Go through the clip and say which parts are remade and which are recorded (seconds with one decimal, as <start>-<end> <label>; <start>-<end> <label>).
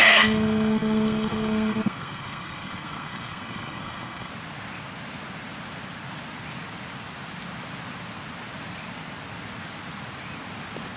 0.0-4.3 remade; 4.3-11.0 recorded